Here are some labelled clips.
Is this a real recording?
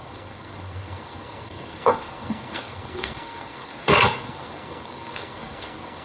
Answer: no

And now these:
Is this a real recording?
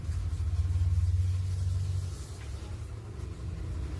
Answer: yes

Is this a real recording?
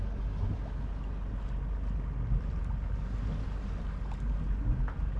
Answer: yes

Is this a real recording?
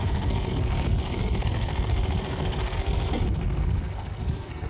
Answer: no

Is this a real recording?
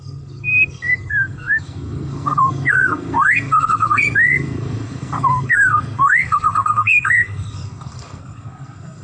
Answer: no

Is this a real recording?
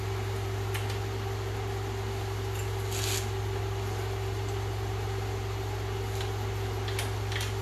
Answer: yes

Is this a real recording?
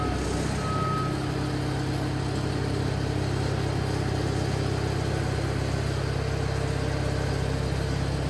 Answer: yes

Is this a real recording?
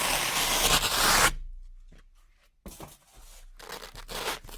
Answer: yes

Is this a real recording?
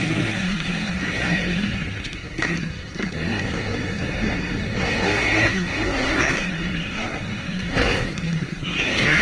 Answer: no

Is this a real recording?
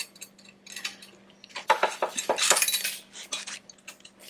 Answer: yes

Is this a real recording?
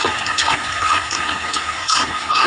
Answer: no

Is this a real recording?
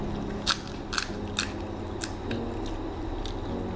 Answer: yes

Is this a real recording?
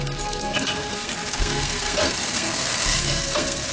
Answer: no